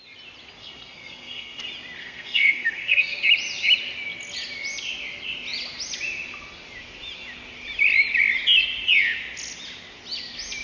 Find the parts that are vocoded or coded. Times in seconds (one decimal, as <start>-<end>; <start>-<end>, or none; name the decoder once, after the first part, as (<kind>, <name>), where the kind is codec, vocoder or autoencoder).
0.6-1.6 (codec, SNAC); 2.0-3.2